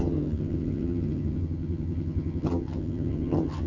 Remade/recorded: remade